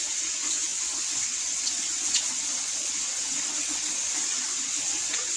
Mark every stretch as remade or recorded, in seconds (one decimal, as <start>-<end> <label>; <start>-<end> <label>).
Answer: 0.0-5.4 remade